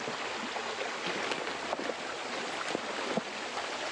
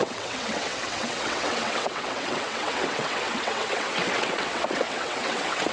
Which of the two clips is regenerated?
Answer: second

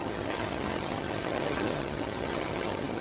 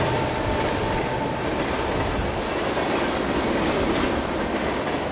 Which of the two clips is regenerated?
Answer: first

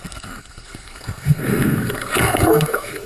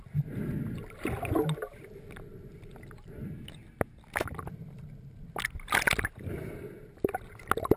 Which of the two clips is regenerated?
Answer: first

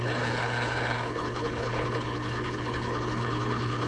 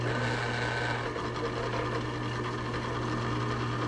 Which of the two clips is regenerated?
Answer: first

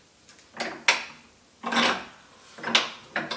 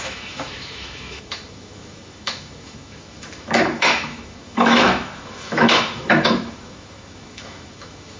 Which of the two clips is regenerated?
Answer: second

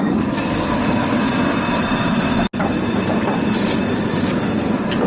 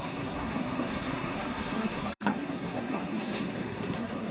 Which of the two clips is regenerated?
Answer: second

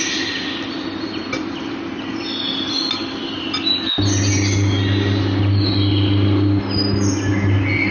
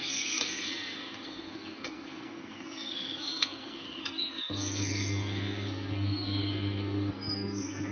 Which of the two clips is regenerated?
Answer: second